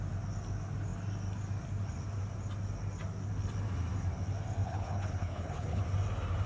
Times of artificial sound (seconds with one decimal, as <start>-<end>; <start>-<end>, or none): 4.6-5.8